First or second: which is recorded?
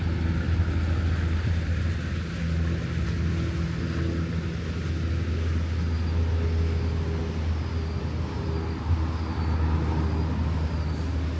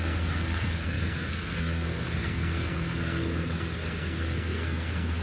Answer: first